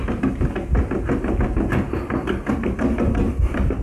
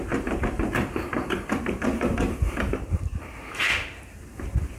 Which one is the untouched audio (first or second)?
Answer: first